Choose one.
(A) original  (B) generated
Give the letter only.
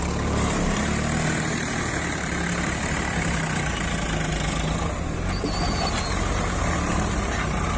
A